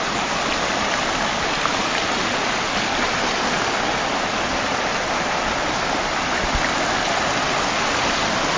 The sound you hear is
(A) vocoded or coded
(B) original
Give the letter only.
B